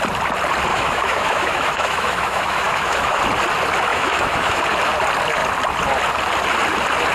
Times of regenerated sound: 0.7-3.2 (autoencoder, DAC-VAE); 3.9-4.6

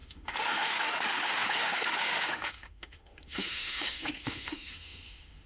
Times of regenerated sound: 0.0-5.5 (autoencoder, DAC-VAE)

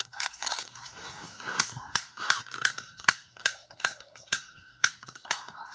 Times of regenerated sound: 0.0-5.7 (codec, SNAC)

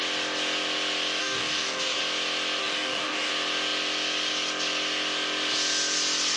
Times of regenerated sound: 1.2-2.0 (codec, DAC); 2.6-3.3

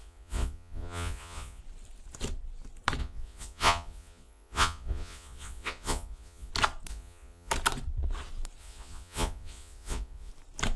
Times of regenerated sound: 0.0-1.6 (vocoder, Vocos); 3.0-6.5; 6.9-7.5; 8.6-10.3